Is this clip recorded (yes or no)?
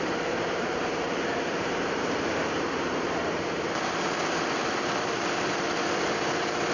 no